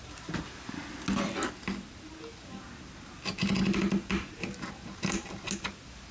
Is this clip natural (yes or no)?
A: yes